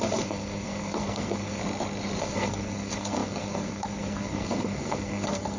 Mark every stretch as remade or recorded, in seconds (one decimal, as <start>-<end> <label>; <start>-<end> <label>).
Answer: 0.0-1.6 remade; 1.6-2.2 recorded; 2.2-5.6 remade